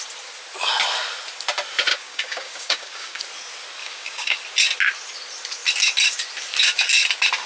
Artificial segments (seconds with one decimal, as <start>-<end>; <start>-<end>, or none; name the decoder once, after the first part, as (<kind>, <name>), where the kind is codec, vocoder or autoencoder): 1.9-3.2 (codec, DAC); 3.8-4.4